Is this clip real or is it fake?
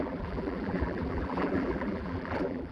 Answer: fake